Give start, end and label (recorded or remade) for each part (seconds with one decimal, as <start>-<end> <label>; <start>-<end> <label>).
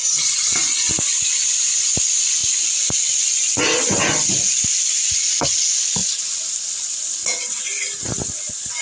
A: 0.0-0.9 remade; 0.9-8.8 recorded